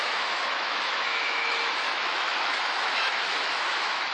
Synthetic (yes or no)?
yes